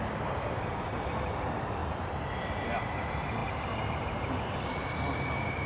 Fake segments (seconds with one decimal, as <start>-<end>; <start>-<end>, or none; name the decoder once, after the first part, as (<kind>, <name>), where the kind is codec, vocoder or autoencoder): 0.0-1.8 (vocoder, BigVGAN v2); 2.4-5.7